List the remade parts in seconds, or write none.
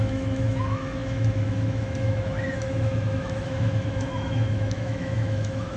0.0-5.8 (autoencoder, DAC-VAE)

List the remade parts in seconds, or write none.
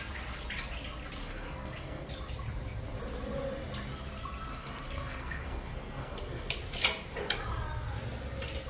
1.2-2.1 (codec, SNAC); 4.5-6.5